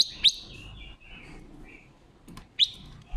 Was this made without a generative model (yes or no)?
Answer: yes